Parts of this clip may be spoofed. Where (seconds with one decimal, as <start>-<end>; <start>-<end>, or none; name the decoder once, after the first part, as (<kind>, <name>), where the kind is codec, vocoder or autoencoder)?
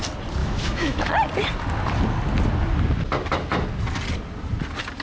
0.4-1.1 (autoencoder, DAC-VAE)